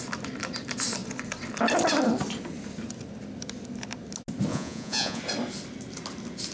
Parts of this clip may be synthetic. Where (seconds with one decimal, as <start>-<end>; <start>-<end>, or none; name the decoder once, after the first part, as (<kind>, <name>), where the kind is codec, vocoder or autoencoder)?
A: 4.5-5.2 (vocoder, Vocos)